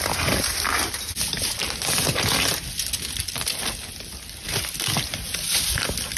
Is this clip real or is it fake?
real